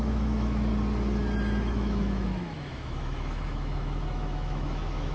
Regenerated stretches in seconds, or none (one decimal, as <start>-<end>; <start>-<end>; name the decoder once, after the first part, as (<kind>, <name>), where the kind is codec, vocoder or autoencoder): 0.0-0.7 (autoencoder, DAC-VAE); 1.7-5.1